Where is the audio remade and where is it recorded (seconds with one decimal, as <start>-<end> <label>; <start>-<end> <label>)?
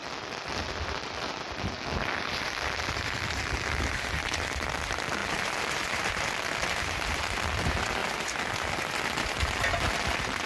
0.0-10.5 recorded